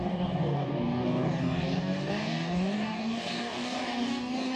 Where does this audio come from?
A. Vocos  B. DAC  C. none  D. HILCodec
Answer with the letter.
B